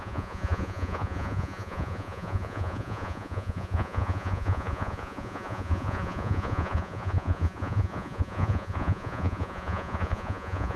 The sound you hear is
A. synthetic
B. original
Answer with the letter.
A